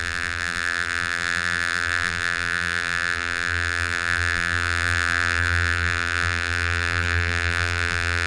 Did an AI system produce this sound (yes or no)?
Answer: yes